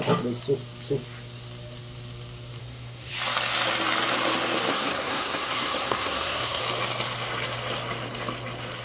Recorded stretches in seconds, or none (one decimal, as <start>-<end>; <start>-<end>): 0.0-2.6; 3.1-4.7; 6.6-8.8